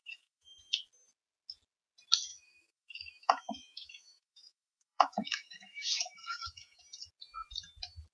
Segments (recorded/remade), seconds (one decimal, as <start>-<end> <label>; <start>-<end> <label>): 0.0-0.6 remade; 0.6-2.3 recorded; 2.3-6.8 remade; 6.8-8.1 recorded